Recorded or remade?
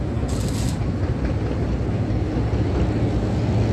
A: recorded